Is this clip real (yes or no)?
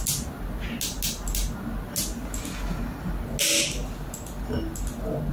yes